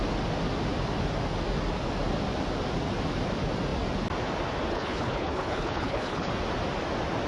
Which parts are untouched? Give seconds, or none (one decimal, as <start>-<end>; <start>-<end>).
0.0-4.7; 6.3-7.3